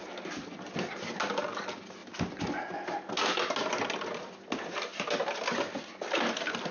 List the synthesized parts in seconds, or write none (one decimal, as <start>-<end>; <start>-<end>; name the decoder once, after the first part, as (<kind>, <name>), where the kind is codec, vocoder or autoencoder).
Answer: none